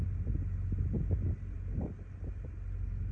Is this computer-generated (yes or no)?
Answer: no